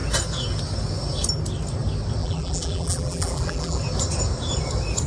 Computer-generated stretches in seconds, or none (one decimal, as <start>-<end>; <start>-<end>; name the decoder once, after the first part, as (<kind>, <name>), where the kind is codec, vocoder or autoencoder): 2.2-3.8 (vocoder, BigVGAN v2)